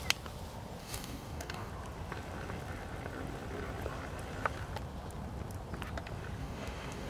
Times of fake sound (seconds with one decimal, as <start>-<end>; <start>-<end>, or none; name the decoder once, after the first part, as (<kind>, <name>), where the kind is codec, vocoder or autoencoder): 0.8-1.7 (codec, DAC); 6.4-7.1